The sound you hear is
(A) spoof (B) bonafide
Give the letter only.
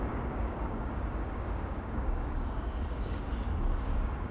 A